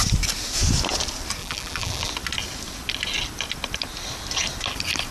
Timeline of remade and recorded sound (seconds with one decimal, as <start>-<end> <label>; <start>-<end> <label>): 0.0-1.4 recorded; 1.4-2.1 remade; 2.1-5.1 recorded